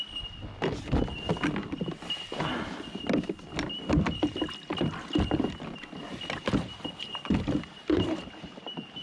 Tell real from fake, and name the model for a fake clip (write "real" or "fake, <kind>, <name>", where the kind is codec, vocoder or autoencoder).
real